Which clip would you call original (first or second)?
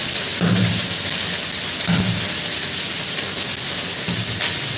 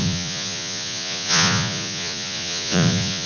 first